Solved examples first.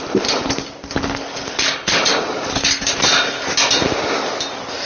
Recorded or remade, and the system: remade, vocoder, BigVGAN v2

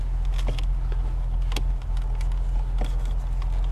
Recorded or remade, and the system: recorded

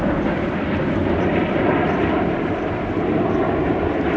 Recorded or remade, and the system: remade, vocoder, BigVGAN v2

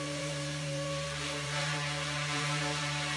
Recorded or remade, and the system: remade, vocoder, BigVGAN v2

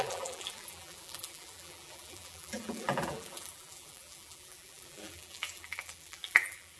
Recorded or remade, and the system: remade, vocoder, BigVGAN v2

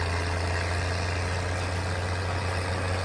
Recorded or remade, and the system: recorded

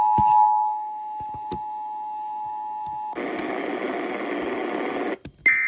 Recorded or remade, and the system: recorded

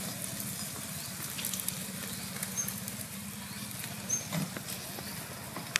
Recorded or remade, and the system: recorded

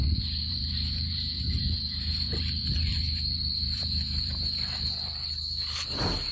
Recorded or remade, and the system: remade, vocoder, BigVGAN v2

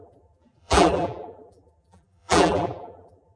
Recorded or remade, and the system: remade, vocoder, BigVGAN v2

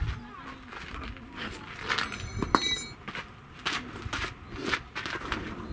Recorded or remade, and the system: recorded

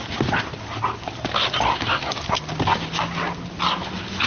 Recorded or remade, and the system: recorded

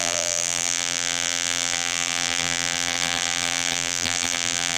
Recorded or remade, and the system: remade, vocoder, BigVGAN v2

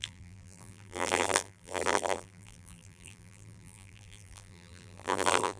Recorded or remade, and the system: remade, vocoder, BigVGAN v2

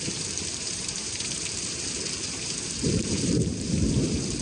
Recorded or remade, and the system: remade, vocoder, BigVGAN v2